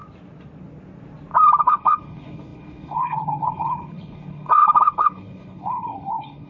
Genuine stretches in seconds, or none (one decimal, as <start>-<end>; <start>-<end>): 0.0-1.6